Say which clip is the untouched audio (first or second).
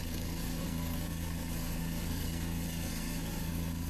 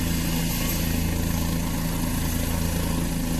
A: second